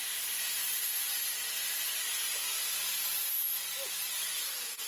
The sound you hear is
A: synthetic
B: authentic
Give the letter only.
B